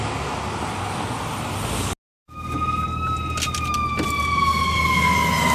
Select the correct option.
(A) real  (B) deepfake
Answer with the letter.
A